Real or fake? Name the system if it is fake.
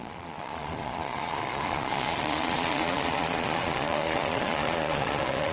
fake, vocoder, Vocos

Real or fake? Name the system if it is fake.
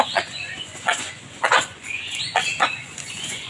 fake, vocoder, Vocos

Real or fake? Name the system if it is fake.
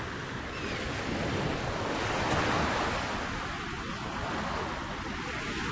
real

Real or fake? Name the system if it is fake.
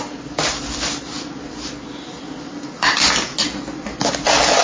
real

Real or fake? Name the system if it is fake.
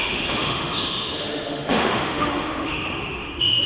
fake, autoencoder, DAC-VAE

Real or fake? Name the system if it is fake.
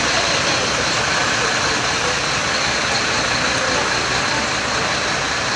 real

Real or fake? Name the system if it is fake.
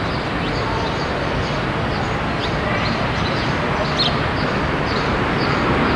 real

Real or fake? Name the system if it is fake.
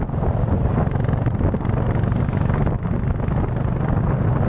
real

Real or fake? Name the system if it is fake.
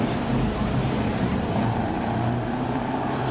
fake, vocoder, BigVGAN v2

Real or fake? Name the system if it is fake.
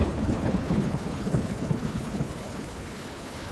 fake, codec, HILCodec